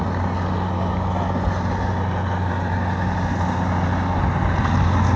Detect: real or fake real